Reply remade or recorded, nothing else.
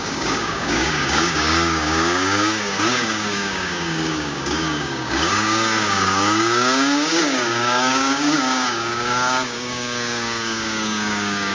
remade